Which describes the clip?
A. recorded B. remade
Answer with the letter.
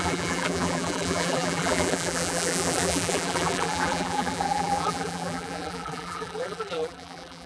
B